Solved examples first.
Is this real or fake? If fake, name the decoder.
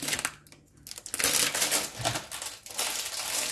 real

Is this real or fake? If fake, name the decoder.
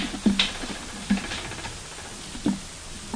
real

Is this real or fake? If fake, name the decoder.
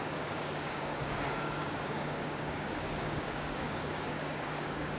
fake, codec, DAC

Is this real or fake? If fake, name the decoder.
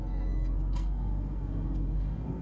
fake, codec, SNAC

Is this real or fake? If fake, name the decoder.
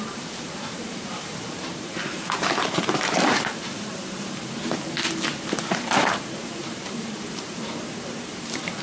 fake, vocoder, BigVGAN v2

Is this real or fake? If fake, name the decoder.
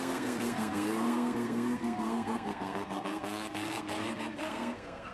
fake, codec, SNAC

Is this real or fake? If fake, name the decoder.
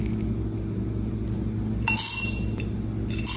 real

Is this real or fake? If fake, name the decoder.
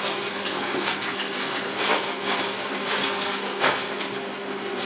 fake, codec, SNAC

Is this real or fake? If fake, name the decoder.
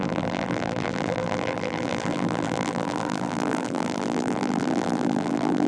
fake, vocoder, BigVGAN v2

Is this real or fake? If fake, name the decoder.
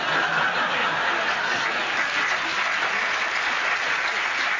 real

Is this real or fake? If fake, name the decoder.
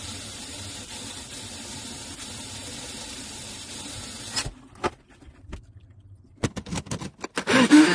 real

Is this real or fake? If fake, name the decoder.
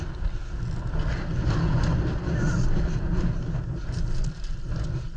real